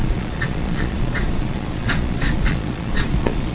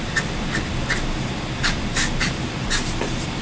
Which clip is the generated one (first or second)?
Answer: first